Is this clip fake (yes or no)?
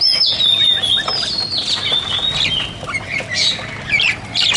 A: no